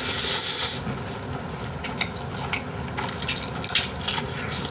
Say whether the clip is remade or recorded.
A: recorded